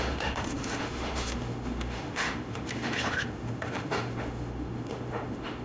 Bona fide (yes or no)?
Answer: no